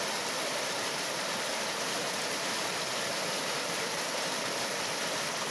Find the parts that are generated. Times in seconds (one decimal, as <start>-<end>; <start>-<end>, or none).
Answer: 1.5-4.3